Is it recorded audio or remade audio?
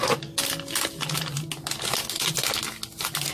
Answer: recorded